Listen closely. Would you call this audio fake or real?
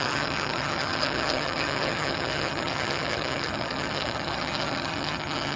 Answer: fake